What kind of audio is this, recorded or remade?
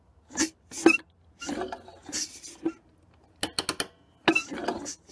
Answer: recorded